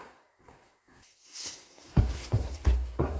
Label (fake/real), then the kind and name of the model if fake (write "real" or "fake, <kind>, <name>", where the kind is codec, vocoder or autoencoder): fake, codec, SNAC